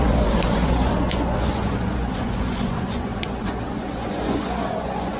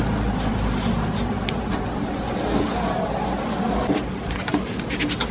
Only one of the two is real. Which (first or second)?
second